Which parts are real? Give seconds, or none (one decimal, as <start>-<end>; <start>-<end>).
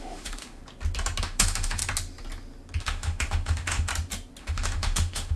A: 0.6-1.2; 1.8-2.8; 3.9-4.4